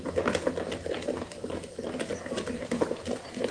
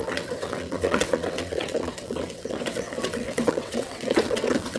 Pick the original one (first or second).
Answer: first